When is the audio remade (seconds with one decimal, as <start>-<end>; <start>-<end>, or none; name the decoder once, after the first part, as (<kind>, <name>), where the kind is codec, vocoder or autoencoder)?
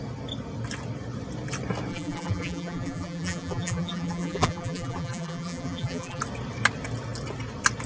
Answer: 1.9-6.2 (vocoder, BigVGAN v2)